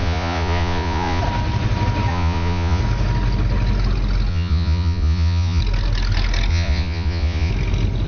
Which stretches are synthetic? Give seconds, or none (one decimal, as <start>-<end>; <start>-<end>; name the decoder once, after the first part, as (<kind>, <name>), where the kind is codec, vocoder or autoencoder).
0.0-1.2 (vocoder, Vocos); 2.1-2.8; 4.3-5.6; 6.5-7.5